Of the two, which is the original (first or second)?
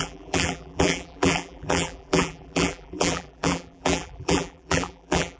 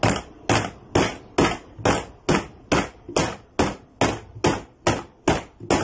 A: second